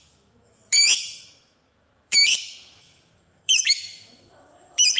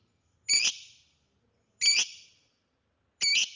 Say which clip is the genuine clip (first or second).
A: second